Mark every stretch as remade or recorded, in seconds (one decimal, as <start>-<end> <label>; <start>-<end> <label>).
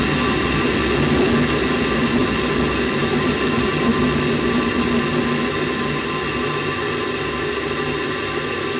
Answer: 0.0-8.8 recorded